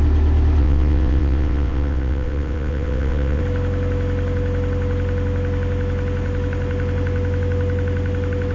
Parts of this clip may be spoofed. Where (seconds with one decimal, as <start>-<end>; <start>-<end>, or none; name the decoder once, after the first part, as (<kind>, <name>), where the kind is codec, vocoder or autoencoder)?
0.6-3.4 (vocoder, WaveNeXt)